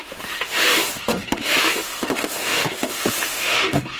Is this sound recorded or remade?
remade